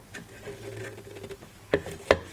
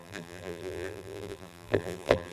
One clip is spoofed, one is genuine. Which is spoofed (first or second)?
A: second